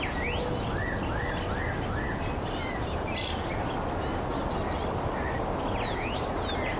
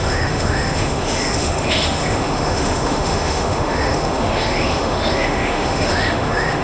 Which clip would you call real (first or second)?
first